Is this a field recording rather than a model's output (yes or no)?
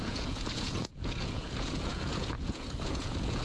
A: no